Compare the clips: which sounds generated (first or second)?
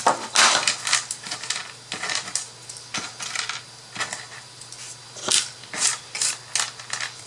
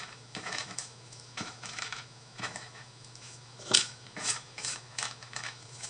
second